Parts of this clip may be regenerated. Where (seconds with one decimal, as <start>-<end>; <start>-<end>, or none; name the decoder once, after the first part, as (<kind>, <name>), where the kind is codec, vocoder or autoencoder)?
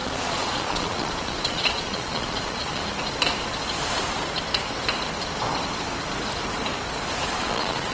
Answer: 0.0-2.8 (vocoder, Vocos); 7.3-7.9